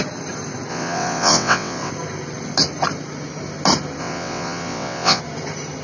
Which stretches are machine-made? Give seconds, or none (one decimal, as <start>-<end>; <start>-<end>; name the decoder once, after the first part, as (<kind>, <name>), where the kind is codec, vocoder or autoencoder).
0.7-1.9 (vocoder, WaveNeXt); 4.0-5.2